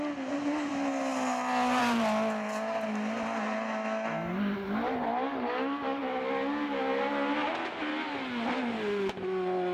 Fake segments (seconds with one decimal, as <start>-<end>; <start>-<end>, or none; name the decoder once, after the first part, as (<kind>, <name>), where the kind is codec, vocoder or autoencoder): none